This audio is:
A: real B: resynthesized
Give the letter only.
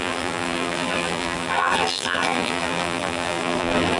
B